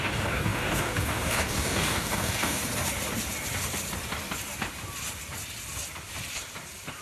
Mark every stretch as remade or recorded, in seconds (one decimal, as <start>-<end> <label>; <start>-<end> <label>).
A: 0.0-2.6 remade; 2.6-7.0 recorded